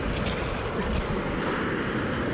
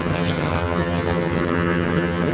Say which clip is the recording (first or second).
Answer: first